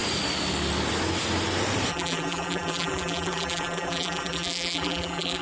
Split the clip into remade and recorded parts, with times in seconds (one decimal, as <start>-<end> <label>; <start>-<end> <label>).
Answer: 0.0-1.9 recorded; 1.9-5.4 remade